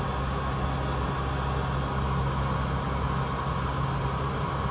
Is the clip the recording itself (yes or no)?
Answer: yes